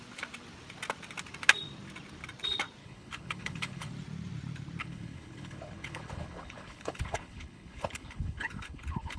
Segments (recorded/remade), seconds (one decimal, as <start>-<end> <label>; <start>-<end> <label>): 0.0-2.8 recorded; 2.8-3.9 remade; 3.9-4.8 recorded; 4.8-9.2 remade